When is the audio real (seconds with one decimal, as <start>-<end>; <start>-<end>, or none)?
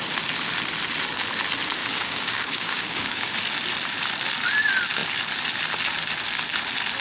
0.0-1.8; 3.3-7.0